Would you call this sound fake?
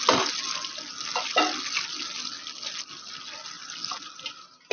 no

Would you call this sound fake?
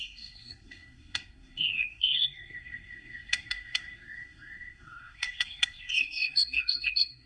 yes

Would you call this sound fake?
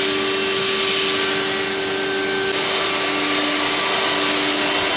no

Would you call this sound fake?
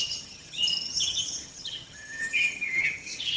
yes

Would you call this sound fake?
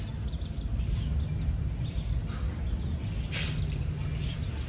no